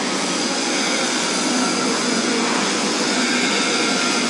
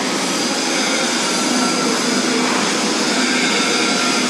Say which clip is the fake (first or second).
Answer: first